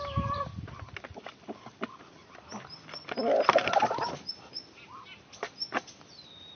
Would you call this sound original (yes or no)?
yes